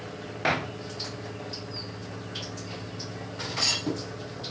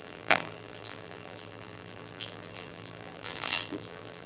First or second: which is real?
first